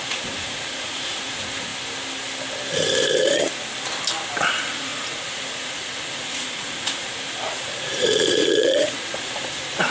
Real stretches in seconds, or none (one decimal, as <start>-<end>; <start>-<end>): 1.7-4.5